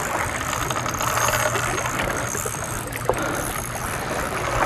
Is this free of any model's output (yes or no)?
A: no